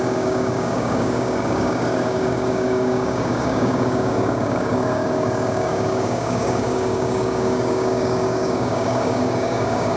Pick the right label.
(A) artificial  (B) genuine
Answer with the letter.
A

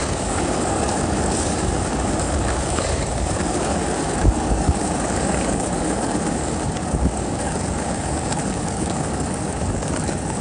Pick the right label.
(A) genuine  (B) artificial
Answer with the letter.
B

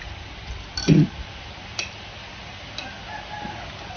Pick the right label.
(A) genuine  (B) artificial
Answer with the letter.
A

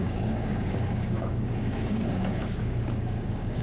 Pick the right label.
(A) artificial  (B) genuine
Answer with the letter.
A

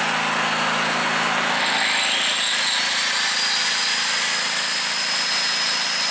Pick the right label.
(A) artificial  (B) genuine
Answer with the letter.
B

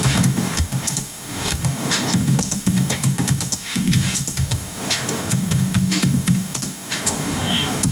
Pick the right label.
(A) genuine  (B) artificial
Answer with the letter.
B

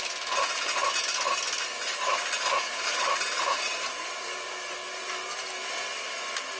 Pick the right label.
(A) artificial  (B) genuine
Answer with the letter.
B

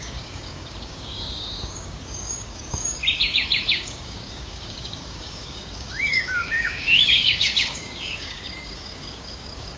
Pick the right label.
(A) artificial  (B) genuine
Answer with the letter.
A